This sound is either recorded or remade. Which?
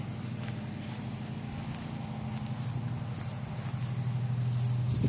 recorded